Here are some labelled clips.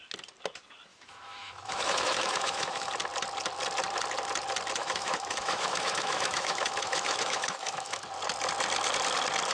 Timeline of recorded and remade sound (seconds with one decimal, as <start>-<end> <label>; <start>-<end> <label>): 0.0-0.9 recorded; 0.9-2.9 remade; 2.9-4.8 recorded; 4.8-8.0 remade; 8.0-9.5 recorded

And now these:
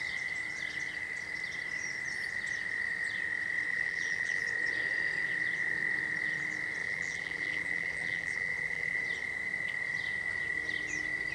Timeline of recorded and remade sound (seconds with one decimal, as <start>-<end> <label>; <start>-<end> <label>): 0.0-3.7 recorded; 3.7-4.4 remade; 4.4-6.8 recorded; 6.8-9.0 remade; 9.0-11.3 recorded

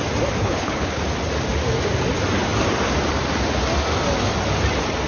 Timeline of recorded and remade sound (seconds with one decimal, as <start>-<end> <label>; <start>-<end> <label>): 0.0-0.4 recorded; 0.4-1.0 remade; 1.0-5.1 recorded

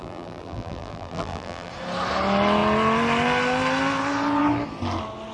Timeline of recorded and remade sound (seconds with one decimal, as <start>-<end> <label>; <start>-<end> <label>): 0.0-1.7 remade; 1.7-5.3 recorded